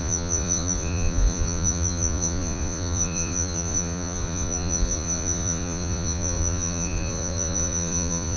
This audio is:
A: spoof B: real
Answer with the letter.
A